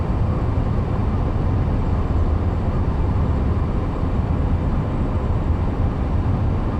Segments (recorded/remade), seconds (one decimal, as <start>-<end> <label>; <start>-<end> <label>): 0.0-6.8 recorded